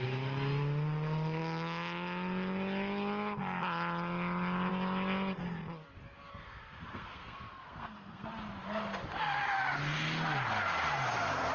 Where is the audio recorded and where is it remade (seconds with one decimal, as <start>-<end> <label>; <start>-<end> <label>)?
0.0-6.3 recorded; 6.3-8.3 remade; 8.3-11.5 recorded